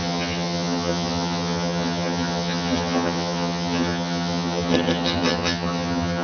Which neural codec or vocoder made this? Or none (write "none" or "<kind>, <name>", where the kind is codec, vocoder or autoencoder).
vocoder, HiFi-GAN